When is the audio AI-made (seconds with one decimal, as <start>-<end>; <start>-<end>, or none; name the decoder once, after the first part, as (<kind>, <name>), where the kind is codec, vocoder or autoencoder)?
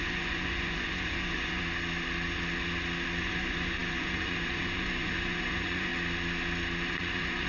0.0-1.6 (vocoder, Vocos); 3.2-5.9; 6.9-7.5